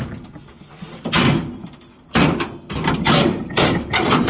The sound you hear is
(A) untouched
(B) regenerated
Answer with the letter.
A